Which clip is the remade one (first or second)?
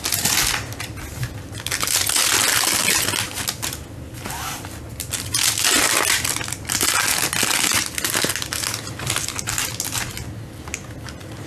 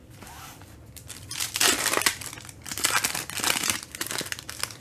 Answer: second